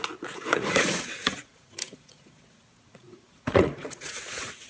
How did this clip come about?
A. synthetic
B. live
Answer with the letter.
A